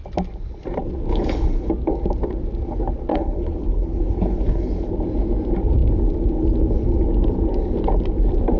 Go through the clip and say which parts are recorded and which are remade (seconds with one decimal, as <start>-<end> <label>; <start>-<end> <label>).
0.0-1.1 recorded; 1.1-1.7 remade; 1.7-3.1 recorded; 3.1-4.9 remade; 4.9-8.6 recorded